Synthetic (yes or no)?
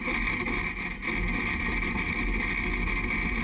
no